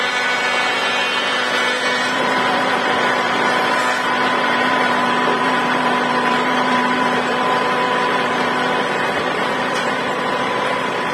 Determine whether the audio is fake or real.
fake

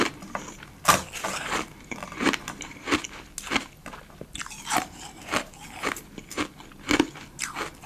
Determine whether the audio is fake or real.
real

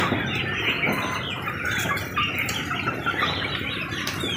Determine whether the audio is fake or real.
real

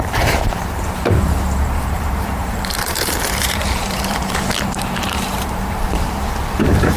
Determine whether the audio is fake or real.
fake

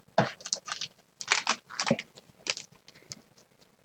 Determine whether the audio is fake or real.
real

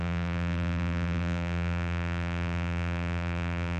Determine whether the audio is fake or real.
fake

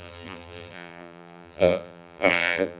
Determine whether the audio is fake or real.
fake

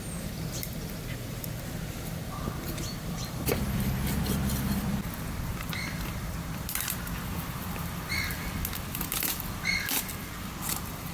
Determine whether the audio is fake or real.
fake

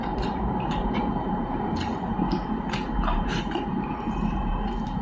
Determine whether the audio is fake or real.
fake